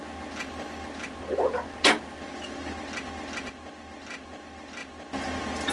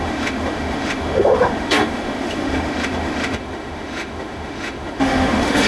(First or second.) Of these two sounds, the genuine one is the first